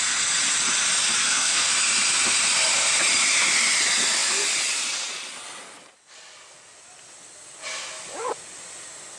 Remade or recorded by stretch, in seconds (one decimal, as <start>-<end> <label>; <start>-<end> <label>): 0.0-1.2 recorded; 1.2-1.7 remade; 1.7-9.2 recorded